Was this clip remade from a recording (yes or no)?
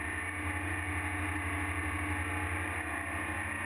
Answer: no